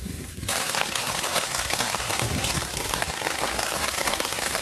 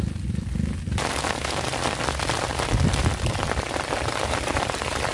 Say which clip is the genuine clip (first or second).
second